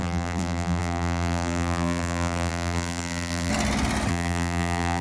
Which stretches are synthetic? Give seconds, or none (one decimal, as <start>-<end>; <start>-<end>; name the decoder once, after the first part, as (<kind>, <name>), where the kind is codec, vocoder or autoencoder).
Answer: 0.0-3.5 (vocoder, BigVGAN v2); 4.1-5.0